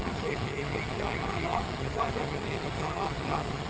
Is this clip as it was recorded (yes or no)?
no